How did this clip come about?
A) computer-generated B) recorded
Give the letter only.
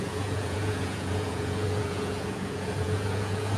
A